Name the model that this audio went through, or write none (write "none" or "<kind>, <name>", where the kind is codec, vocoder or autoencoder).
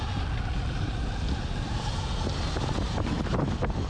none